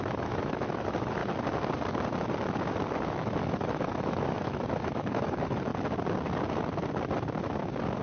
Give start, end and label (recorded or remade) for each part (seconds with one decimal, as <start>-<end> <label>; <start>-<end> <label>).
0.0-1.2 remade; 1.2-3.0 recorded; 3.0-5.7 remade; 5.7-8.0 recorded